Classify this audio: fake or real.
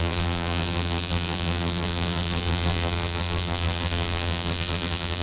fake